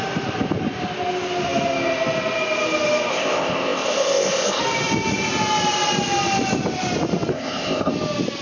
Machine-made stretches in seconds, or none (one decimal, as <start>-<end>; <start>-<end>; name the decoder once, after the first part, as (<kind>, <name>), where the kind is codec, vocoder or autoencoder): 3.1-4.6 (codec, ZipCodec); 7.3-7.9